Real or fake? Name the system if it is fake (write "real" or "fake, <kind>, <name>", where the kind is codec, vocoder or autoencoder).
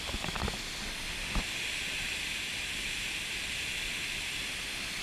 real